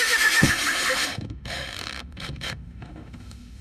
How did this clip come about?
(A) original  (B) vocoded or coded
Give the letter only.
B